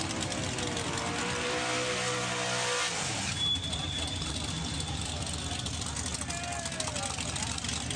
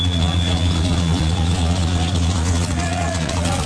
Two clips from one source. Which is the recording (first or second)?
first